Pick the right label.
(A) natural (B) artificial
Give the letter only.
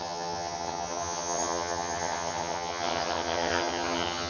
B